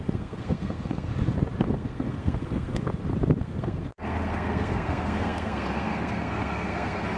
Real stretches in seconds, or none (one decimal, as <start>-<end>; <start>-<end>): 1.1-1.7; 2.9-3.4